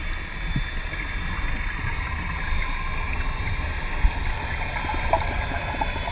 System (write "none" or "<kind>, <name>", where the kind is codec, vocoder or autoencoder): none